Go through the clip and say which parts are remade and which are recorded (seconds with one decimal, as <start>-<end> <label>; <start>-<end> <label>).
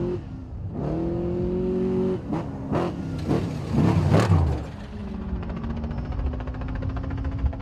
0.0-7.6 recorded